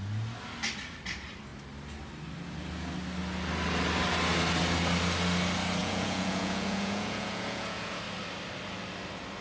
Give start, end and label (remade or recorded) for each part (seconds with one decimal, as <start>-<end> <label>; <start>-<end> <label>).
0.0-5.8 recorded; 5.8-8.0 remade; 8.0-9.4 recorded